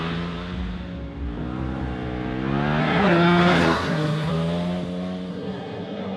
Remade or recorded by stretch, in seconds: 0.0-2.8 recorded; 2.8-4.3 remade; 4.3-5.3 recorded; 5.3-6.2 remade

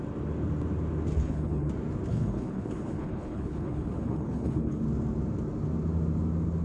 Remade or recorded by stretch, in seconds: 0.0-1.2 recorded; 1.2-1.7 remade; 1.7-2.1 recorded; 2.1-4.8 remade; 4.8-6.6 recorded

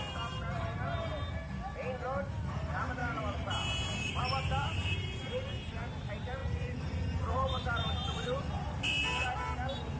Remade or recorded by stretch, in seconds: 0.0-3.0 recorded; 3.0-4.2 remade; 4.2-6.4 recorded; 6.4-8.6 remade; 8.6-10.0 recorded